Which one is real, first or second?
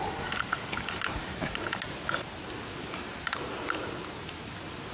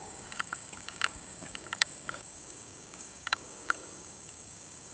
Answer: first